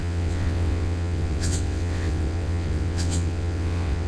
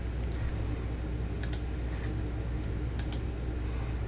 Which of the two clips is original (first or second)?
second